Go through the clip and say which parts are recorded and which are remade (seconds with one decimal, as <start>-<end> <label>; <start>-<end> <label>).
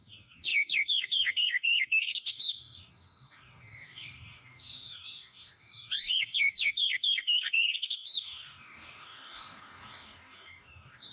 0.0-11.1 remade